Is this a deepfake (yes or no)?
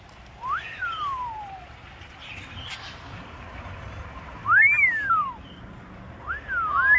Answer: no